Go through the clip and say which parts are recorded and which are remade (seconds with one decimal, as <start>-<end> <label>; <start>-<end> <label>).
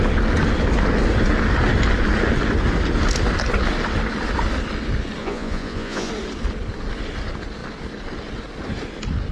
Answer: 0.0-5.2 recorded; 5.2-6.1 remade; 6.1-9.3 recorded